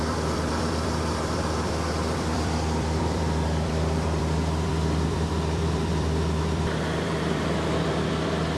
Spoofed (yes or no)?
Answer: yes